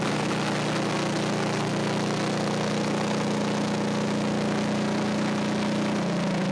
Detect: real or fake real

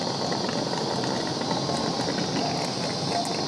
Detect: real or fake real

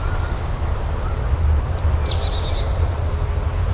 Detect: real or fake real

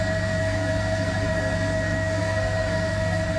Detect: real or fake fake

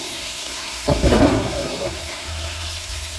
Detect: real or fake fake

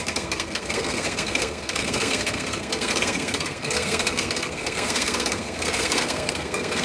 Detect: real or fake fake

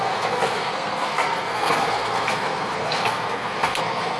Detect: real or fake fake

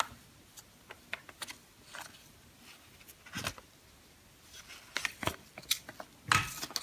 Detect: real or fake real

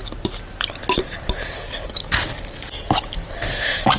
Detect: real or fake real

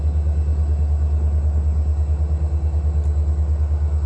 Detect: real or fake real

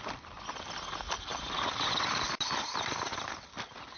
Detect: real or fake real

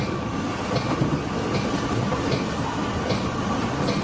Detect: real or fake real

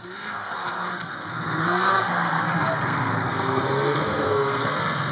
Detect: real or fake fake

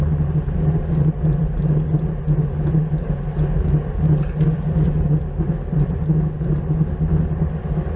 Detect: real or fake real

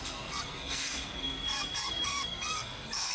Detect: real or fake fake